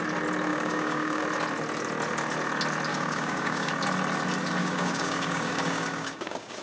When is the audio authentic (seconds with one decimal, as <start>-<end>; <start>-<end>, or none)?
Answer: 0.0-0.5; 1.2-2.9; 3.7-4.6